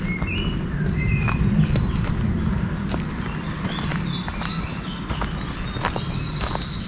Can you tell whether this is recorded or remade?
recorded